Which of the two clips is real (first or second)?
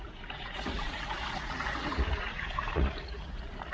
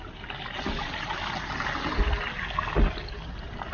second